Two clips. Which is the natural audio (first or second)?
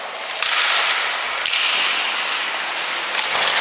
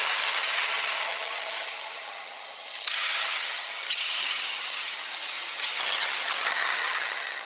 first